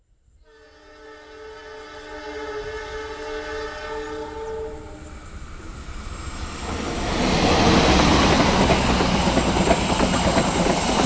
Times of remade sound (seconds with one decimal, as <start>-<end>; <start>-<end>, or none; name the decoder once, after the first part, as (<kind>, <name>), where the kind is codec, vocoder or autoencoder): none